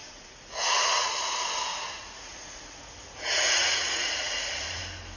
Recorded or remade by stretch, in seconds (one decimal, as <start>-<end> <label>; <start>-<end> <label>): 0.0-1.1 remade; 1.1-1.7 recorded; 1.7-4.8 remade; 4.8-5.2 recorded